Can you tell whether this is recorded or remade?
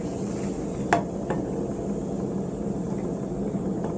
recorded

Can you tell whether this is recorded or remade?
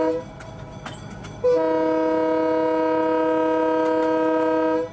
recorded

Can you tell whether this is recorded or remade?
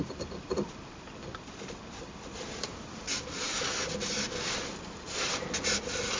recorded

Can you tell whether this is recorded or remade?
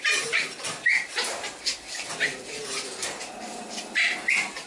recorded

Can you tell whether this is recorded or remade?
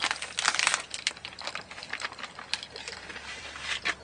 remade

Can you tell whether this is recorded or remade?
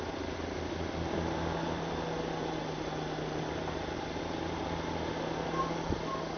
recorded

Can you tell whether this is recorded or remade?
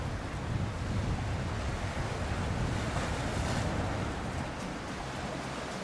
recorded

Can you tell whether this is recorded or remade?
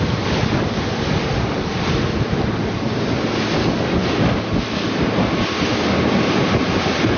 recorded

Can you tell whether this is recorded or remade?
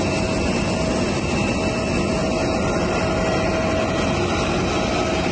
recorded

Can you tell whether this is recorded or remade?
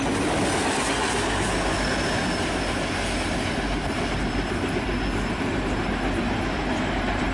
recorded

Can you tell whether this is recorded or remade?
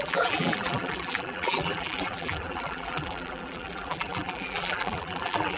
remade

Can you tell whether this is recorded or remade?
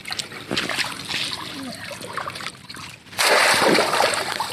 recorded